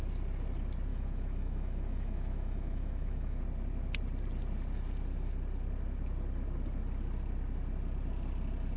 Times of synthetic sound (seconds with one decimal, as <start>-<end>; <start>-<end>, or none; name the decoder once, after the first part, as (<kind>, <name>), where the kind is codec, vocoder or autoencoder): 0.9-3.4 (autoencoder, DAC-VAE)